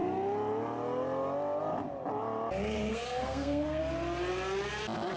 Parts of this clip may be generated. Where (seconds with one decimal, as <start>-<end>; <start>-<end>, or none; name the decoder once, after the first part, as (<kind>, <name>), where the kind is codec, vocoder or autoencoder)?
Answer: 2.9-3.8 (codec, SNAC)